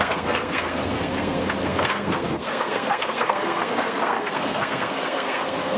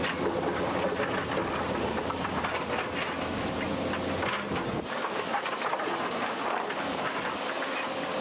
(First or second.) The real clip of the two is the second